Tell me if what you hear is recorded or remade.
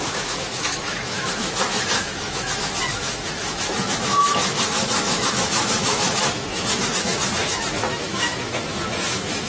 remade